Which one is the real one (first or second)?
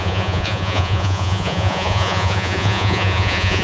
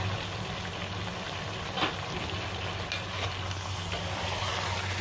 second